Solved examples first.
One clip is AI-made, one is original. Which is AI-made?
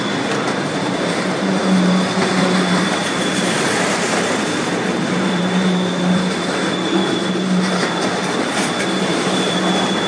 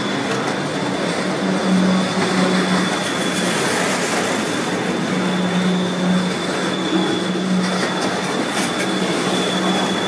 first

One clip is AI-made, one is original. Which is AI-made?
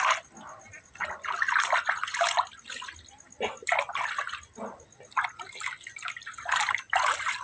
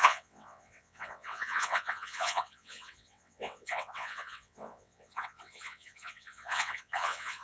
second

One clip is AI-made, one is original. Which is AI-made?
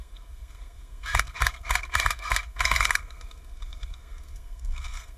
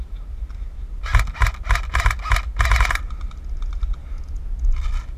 first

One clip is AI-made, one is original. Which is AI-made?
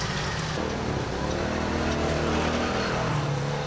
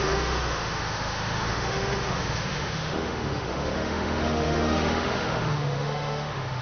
second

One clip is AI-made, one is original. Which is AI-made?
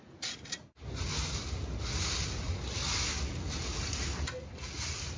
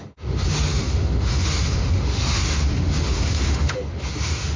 second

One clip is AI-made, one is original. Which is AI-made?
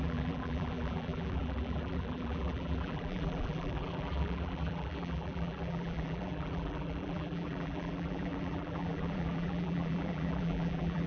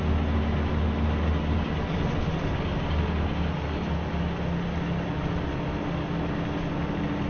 first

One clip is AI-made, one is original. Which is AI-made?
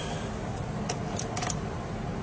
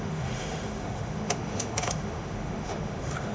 second